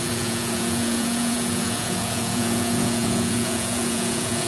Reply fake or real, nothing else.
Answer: fake